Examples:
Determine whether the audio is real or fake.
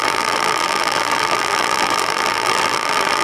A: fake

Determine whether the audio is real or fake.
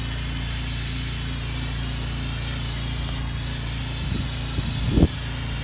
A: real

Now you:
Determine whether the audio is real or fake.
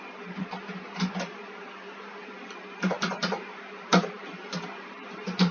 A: fake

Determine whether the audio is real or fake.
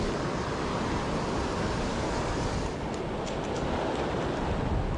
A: real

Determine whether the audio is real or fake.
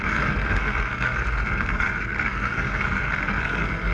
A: fake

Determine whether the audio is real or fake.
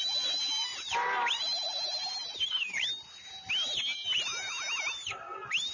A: real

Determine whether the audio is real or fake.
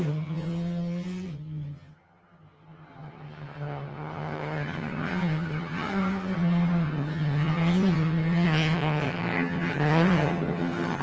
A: fake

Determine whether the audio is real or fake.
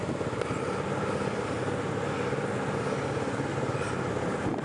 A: real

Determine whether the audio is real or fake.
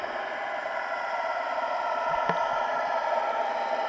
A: real